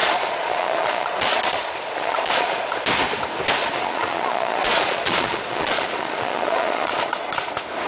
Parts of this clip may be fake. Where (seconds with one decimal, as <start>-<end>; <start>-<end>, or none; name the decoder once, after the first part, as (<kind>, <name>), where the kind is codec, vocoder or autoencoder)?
0.0-2.7 (vocoder, Vocos); 3.6-7.5

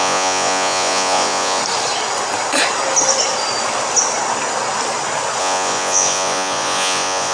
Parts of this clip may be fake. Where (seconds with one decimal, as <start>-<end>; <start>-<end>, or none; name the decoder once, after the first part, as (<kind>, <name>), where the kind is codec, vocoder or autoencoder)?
0.0-1.6 (vocoder, Vocos); 5.4-7.3

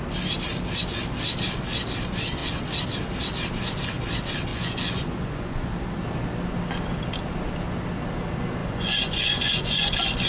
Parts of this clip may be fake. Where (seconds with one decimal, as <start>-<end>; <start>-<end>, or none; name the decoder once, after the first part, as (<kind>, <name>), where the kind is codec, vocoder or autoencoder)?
4.5-5.7 (vocoder, Vocos); 8.6-10.3

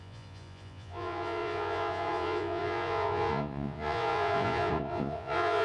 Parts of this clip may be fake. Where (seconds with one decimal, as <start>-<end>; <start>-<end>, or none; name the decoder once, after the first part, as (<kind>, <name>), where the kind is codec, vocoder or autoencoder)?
0.0-5.6 (vocoder, Vocos)

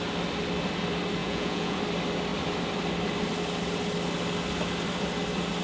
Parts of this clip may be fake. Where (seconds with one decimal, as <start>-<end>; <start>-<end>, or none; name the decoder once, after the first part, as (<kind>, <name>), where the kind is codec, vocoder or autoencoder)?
1.2-1.8 (vocoder, Vocos)

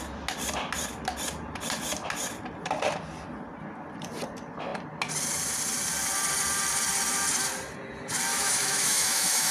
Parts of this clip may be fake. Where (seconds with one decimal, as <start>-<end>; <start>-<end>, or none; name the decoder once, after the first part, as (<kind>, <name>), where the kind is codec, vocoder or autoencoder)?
8.3-9.5 (autoencoder, DAC-VAE)

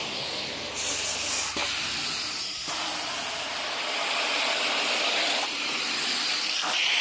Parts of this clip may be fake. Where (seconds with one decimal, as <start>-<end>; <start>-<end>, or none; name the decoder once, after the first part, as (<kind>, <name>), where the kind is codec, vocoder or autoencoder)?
none